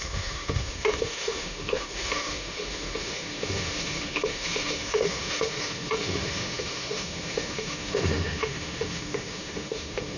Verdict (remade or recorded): remade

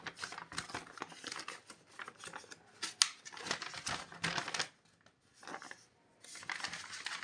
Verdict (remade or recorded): recorded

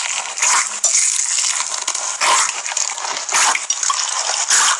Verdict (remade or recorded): recorded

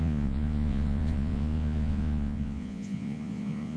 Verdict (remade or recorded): remade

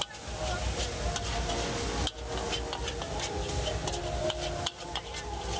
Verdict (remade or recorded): recorded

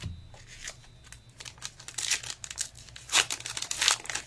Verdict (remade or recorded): recorded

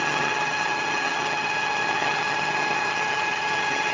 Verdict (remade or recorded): remade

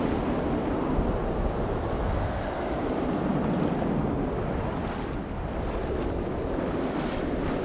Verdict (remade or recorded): recorded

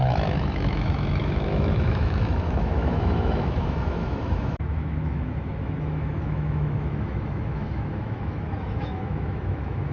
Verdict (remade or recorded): remade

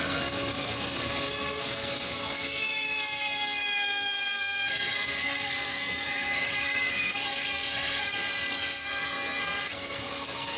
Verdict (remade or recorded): remade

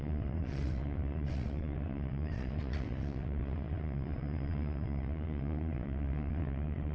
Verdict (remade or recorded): remade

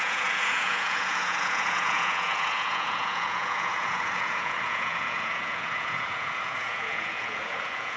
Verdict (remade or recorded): remade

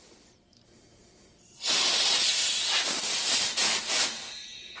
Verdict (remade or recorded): recorded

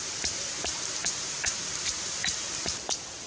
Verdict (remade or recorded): recorded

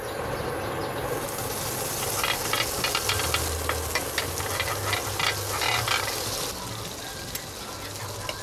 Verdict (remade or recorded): recorded